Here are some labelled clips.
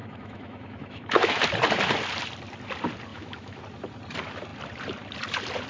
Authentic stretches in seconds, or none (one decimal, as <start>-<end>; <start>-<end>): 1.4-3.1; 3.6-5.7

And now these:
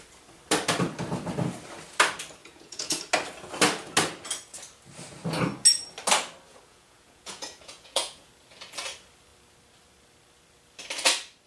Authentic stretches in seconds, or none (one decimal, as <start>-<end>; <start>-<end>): 0.0-2.4; 3.0-6.5; 8.3-11.5

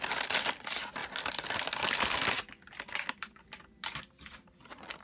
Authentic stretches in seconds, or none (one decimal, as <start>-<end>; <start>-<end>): 0.0-5.0

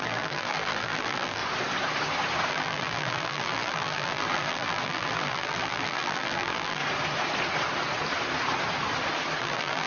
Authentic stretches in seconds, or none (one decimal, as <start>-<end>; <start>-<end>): 1.4-2.5; 6.8-9.4

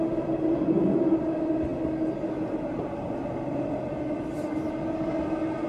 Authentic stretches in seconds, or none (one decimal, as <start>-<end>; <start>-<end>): 0.0-5.7

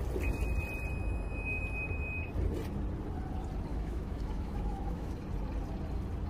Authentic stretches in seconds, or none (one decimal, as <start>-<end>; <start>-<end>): 0.0-1.0; 1.6-3.7; 5.1-6.3